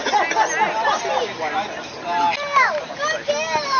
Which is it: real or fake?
real